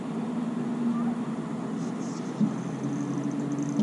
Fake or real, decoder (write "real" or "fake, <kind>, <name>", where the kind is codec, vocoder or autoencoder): real